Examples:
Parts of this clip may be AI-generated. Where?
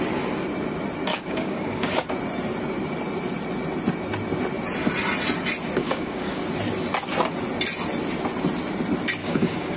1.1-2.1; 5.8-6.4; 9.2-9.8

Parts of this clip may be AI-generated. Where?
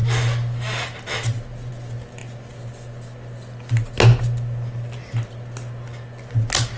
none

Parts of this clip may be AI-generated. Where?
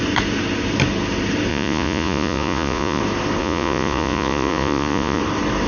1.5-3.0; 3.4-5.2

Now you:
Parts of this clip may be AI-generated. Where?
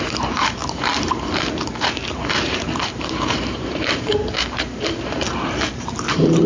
0.0-6.5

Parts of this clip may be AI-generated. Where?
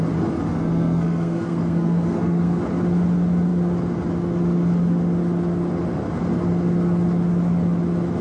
0.5-2.6